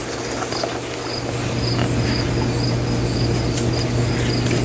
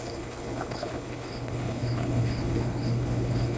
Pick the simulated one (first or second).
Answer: second